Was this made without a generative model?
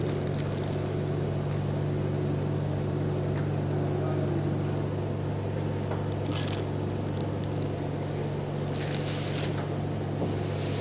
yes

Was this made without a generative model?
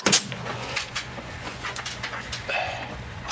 no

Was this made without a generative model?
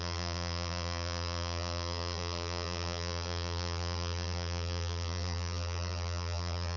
no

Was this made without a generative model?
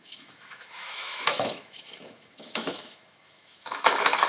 no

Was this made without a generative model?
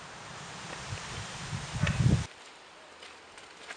no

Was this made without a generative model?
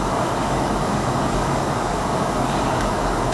no